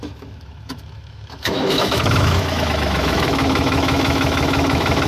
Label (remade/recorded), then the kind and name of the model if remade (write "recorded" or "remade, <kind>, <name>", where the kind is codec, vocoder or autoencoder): remade, autoencoder, DAC-VAE